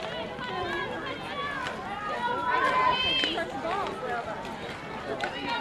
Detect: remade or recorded recorded